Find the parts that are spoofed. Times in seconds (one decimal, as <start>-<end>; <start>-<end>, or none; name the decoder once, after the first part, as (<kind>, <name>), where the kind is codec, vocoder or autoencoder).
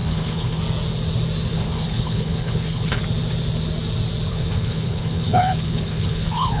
0.0-0.6 (codec, HILCodec); 1.5-3.0; 4.3-6.6